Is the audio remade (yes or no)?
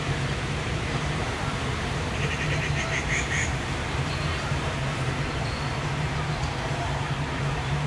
yes